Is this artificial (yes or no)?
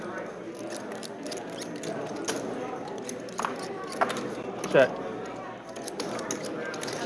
no